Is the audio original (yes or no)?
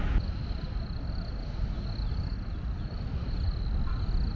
yes